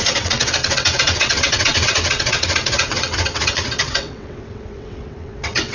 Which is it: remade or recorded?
remade